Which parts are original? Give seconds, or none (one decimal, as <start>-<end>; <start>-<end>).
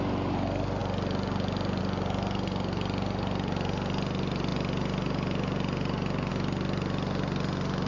0.0-7.9